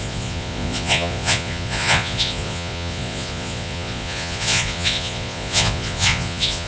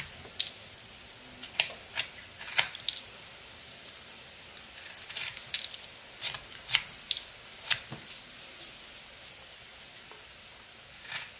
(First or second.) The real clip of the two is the second